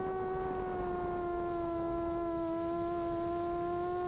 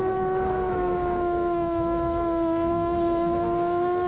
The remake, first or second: second